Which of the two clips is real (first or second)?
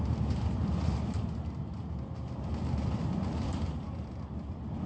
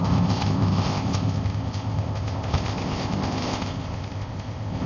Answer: first